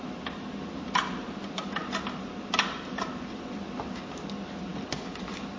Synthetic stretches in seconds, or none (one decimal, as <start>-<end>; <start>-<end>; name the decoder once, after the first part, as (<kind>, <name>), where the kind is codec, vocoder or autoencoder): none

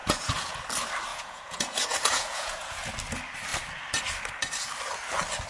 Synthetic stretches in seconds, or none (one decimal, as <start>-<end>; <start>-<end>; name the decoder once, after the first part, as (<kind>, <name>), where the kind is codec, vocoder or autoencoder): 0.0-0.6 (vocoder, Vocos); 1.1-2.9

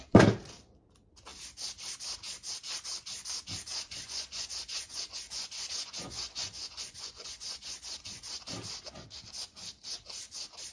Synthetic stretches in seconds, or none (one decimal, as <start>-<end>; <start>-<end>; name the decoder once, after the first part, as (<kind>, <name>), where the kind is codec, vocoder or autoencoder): 3.7-8.4 (vocoder, Vocos)